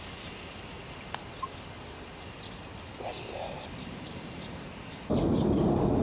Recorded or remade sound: recorded